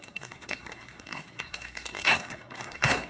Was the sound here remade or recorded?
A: remade